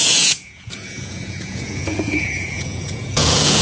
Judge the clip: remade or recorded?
remade